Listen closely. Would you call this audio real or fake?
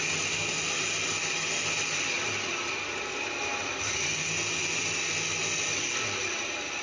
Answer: real